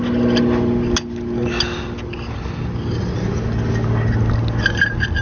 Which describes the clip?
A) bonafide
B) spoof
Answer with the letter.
A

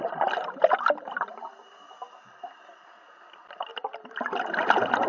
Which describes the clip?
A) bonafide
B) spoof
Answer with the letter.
B